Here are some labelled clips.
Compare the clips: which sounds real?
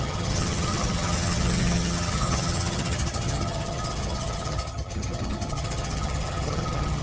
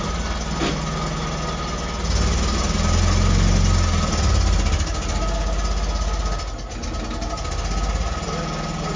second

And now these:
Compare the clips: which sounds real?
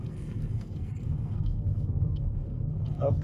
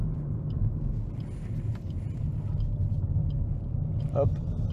second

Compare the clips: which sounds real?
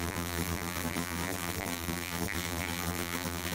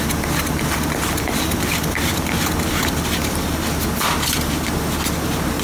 second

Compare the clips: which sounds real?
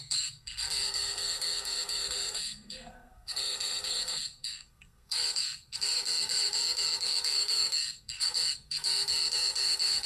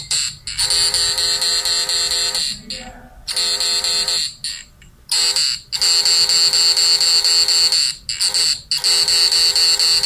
second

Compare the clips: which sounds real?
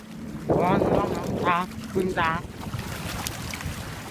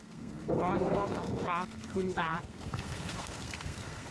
first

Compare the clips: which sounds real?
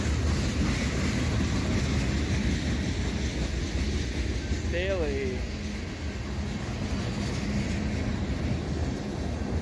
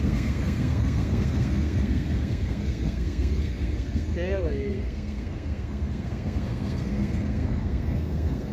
first